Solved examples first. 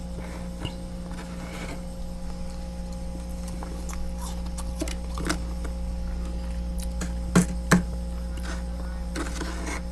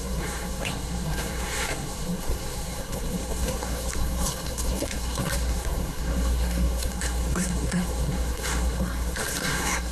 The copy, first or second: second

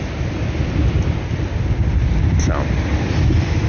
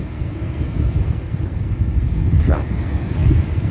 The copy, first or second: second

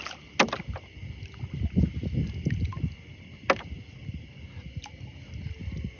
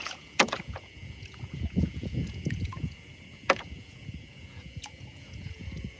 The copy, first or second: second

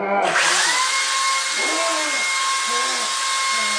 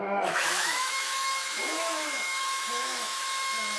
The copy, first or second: second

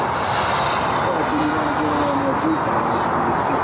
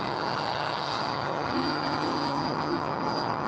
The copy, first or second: second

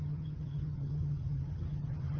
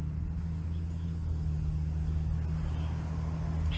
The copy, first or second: first